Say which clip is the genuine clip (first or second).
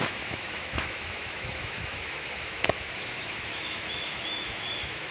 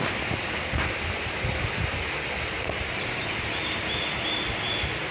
second